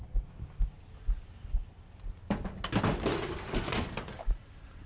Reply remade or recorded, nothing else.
recorded